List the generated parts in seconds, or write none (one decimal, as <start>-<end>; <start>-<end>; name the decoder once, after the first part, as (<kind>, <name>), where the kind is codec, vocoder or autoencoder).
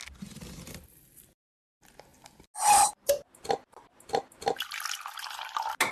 none